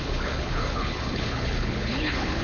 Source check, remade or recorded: remade